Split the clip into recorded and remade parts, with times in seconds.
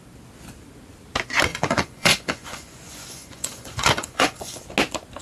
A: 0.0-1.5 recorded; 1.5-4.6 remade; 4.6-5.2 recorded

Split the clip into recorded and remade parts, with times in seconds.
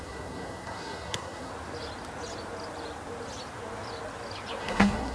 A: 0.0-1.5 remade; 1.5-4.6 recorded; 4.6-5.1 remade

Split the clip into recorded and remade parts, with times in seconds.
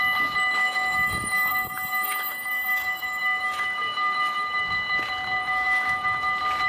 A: 0.0-0.6 recorded; 0.6-4.6 remade; 4.6-5.4 recorded; 5.4-6.3 remade; 6.3-6.7 recorded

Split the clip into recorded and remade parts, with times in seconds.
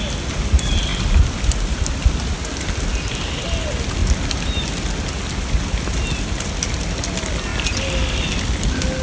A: 0.0-9.0 recorded